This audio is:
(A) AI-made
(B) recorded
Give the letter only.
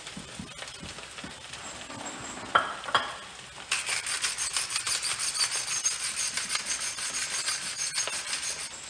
B